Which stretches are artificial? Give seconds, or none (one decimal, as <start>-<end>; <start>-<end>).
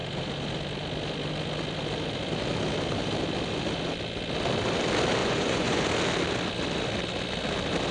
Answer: 5.2-5.8